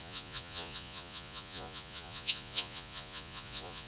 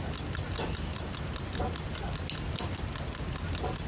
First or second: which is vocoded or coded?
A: first